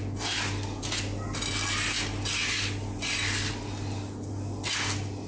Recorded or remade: recorded